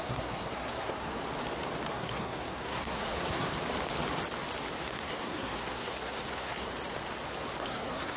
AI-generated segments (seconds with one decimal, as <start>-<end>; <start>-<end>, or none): 0.0-1.2; 1.9-3.5; 4.8-6.7; 7.6-8.2